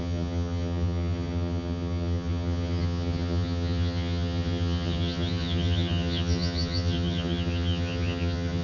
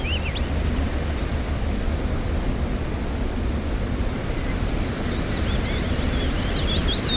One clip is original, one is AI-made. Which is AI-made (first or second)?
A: first